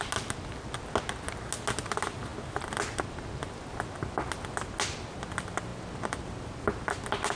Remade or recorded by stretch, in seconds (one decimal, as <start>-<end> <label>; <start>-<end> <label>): 0.0-7.4 recorded